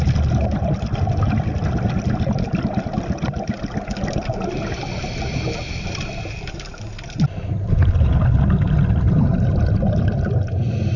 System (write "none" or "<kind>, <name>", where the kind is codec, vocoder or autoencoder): none